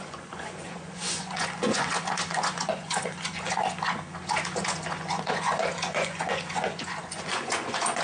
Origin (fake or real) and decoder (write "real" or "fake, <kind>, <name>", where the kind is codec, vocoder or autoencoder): fake, vocoder, Vocos